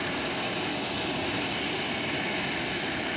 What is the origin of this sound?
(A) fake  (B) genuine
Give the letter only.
B